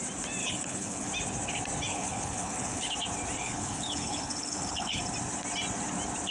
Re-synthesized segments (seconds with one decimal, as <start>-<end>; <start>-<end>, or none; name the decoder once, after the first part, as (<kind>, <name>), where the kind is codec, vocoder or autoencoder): 0.4-1.1 (codec, HILCodec); 1.9-2.9; 3.4-5.0